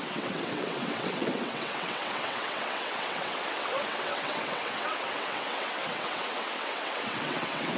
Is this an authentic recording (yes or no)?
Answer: no